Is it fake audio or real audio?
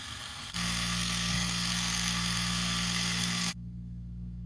fake